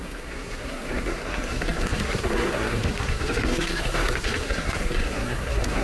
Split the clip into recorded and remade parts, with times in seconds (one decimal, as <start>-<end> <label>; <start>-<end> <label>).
0.0-5.8 remade